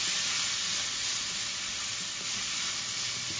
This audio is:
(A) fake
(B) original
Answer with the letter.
B